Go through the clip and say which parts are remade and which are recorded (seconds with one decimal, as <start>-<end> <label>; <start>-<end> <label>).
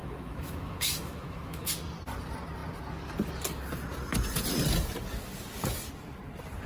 0.0-1.7 remade; 1.7-6.7 recorded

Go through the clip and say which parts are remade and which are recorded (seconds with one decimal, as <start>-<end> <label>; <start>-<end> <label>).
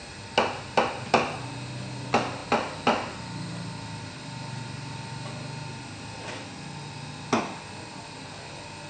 0.0-8.9 recorded